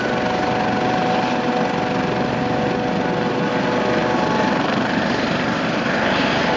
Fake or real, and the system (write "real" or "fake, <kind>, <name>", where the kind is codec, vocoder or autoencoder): real